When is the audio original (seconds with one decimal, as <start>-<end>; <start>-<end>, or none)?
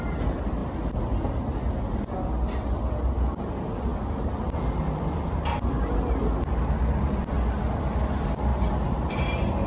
0.0-8.5; 9.1-9.7